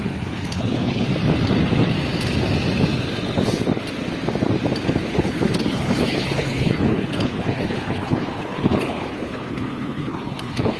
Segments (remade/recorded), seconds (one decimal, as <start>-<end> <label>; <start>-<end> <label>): 0.0-1.1 remade; 1.1-5.1 recorded; 5.1-10.8 remade